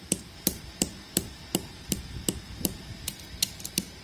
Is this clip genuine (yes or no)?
no